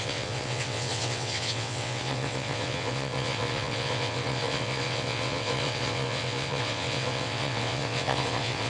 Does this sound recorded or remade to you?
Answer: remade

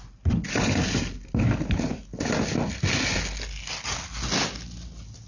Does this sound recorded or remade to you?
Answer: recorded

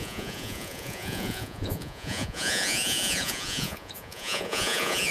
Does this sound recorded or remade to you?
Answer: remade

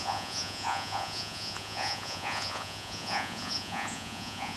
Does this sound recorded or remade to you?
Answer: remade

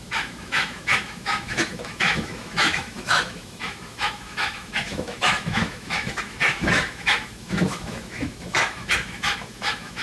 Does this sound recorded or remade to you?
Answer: remade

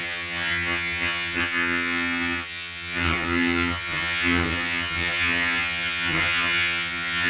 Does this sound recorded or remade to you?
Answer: remade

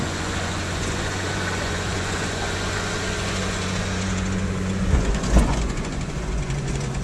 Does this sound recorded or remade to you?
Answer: remade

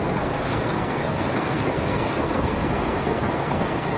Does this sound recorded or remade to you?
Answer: remade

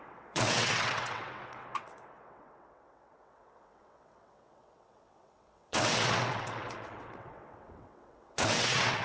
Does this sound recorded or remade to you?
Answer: remade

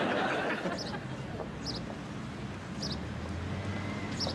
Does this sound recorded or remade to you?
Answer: recorded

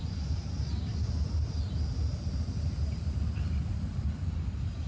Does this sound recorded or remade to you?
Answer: remade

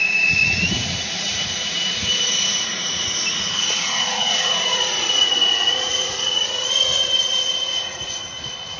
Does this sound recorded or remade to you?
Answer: remade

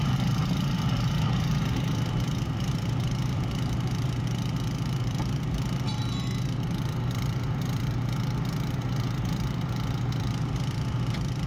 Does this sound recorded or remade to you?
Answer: remade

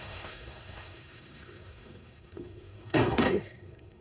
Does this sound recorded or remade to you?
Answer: remade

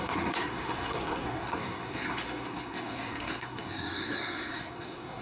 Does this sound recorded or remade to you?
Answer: remade